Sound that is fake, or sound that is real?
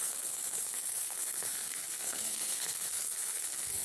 fake